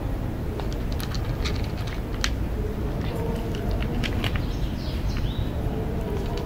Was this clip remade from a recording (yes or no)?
no